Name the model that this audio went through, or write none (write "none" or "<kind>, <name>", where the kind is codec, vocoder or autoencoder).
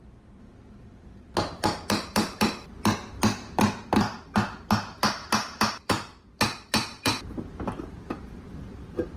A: vocoder, BigVGAN v2